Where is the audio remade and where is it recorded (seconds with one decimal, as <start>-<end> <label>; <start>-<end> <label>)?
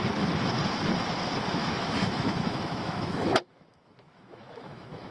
0.0-1.6 recorded; 1.6-5.1 remade